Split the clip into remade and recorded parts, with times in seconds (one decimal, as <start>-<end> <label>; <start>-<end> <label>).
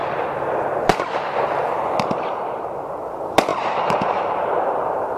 0.0-3.5 recorded; 3.5-4.4 remade; 4.4-5.2 recorded